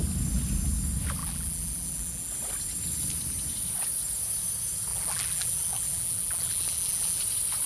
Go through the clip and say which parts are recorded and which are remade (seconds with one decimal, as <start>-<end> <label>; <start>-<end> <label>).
0.0-1.2 recorded; 1.2-2.3 remade; 2.3-4.9 recorded; 4.9-7.2 remade; 7.2-7.7 recorded